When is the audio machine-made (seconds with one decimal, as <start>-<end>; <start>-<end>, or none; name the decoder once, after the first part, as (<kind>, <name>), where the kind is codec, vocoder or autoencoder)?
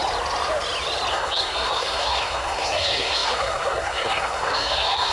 1.1-5.1 (codec, SNAC)